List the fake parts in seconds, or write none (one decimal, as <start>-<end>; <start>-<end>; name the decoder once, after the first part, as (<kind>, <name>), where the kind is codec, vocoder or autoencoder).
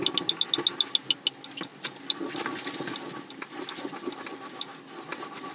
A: none